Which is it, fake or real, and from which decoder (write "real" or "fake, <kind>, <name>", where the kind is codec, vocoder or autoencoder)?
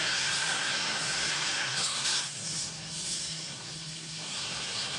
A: fake, codec, SNAC